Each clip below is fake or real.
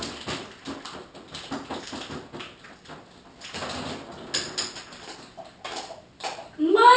real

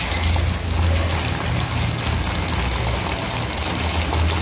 real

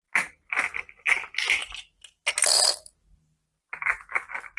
real